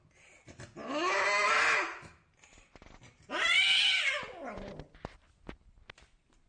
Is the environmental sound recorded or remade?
recorded